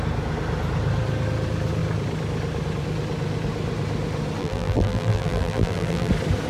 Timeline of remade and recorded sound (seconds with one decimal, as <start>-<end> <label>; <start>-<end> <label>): 0.0-4.4 recorded; 4.4-6.1 remade; 6.1-6.5 recorded